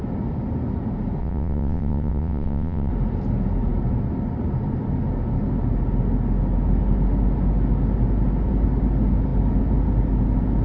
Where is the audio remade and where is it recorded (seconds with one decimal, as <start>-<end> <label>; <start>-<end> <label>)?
0.0-1.2 recorded; 1.2-2.9 remade; 2.9-10.6 recorded